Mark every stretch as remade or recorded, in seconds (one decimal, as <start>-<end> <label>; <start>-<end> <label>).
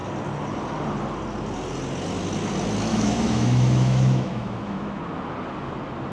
0.0-2.9 recorded; 2.9-5.0 remade; 5.0-6.1 recorded